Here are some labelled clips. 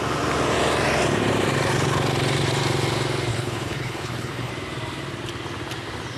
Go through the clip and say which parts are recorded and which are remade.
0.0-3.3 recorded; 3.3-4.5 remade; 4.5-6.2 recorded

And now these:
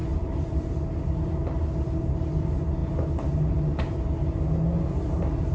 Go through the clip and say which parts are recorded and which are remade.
0.0-0.7 remade; 0.7-5.5 recorded

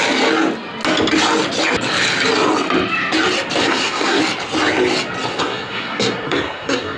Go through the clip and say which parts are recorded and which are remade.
0.0-3.6 recorded; 3.6-4.2 remade; 4.2-5.3 recorded; 5.3-7.0 remade

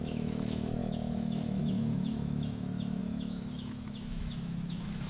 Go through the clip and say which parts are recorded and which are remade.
0.0-5.1 remade

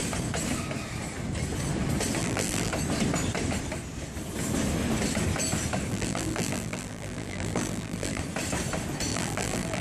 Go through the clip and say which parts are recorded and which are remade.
0.0-2.2 recorded; 2.2-2.7 remade; 2.7-5.9 recorded; 5.9-8.2 remade; 8.2-9.1 recorded; 9.1-9.8 remade

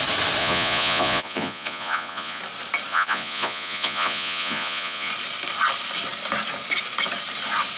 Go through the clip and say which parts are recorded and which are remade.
0.0-0.4 recorded; 0.4-2.4 remade; 2.4-2.9 recorded; 2.9-5.1 remade; 5.1-7.8 recorded

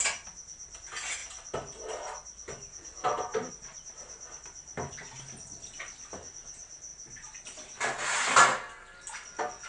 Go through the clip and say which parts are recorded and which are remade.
0.0-9.7 recorded

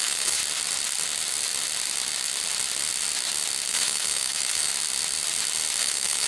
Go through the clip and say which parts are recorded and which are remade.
0.0-0.4 remade; 0.4-3.7 recorded; 3.7-4.7 remade; 4.7-5.8 recorded; 5.8-6.3 remade